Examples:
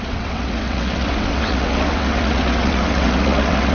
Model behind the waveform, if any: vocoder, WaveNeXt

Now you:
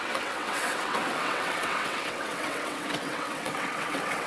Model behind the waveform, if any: vocoder, WaveNeXt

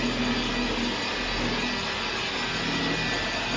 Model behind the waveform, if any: none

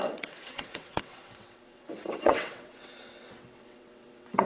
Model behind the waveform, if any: vocoder, WaveNeXt